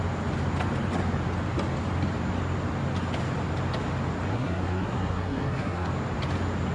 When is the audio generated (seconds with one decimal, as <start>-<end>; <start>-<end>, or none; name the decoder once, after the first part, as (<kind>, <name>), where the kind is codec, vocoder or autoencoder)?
4.3-5.9 (codec, SNAC)